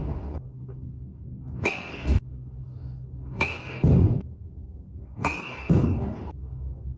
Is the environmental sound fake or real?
fake